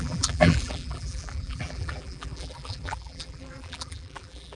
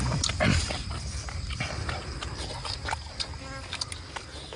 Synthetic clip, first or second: first